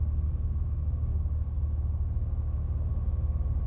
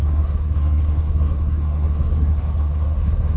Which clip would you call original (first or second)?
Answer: first